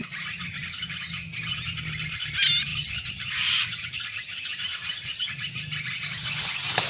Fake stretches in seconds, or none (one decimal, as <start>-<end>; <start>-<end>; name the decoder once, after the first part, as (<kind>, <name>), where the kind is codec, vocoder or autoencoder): 2.7-6.9 (vocoder, BigVGAN v2)